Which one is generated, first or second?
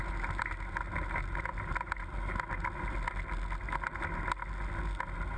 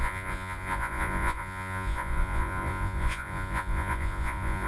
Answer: second